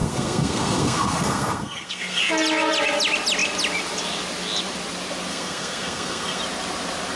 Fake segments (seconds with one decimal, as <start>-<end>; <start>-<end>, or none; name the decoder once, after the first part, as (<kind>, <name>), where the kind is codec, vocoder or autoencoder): 0.0-2.2 (codec, SNAC); 5.3-6.4